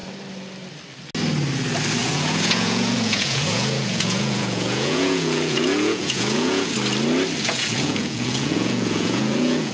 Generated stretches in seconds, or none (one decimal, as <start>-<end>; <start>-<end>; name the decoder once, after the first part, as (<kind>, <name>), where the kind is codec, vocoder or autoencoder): 2.0-6.7 (vocoder, Vocos); 7.4-9.7